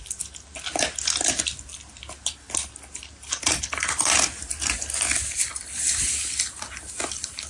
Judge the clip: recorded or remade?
recorded